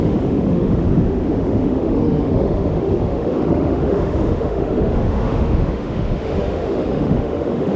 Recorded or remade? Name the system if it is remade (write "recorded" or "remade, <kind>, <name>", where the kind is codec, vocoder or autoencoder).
remade, autoencoder, DAC-VAE